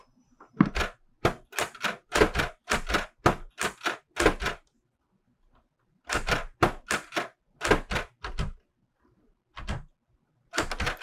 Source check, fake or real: real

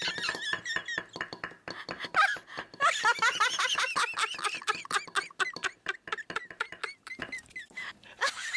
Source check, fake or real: real